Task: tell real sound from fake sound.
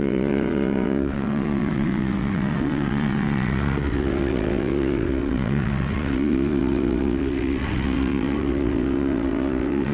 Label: fake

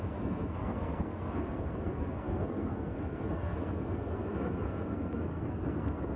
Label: fake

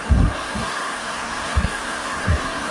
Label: fake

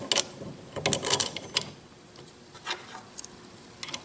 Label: real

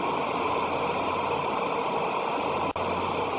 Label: real